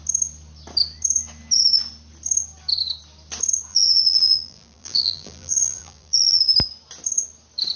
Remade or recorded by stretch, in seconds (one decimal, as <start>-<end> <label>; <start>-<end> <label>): 0.0-3.7 recorded; 3.7-6.4 remade; 6.4-7.8 recorded